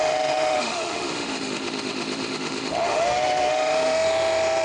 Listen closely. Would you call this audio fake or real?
fake